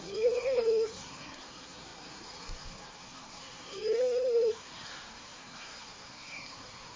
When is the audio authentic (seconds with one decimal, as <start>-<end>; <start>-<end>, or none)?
none